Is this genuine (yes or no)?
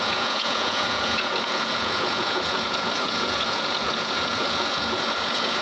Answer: no